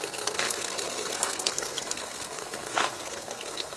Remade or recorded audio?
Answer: remade